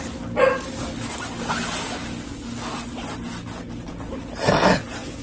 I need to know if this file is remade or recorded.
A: recorded